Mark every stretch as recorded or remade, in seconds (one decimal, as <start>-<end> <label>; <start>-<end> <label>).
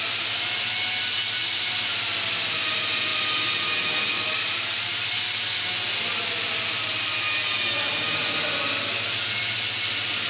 0.0-10.3 recorded